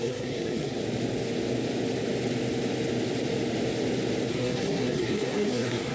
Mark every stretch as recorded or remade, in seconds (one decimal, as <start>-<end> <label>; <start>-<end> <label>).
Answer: 0.0-0.8 remade; 0.8-4.3 recorded; 4.3-5.9 remade